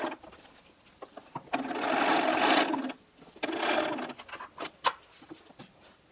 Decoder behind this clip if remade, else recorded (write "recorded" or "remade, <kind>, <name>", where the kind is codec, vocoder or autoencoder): recorded